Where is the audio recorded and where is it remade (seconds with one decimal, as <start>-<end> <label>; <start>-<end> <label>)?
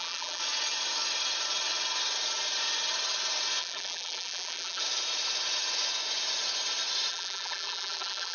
0.0-0.4 remade; 0.4-3.6 recorded; 3.6-4.8 remade; 4.8-7.1 recorded; 7.1-8.3 remade